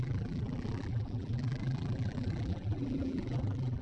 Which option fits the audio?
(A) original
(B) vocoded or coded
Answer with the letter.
B